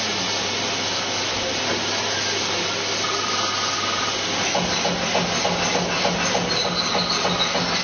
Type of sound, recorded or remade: recorded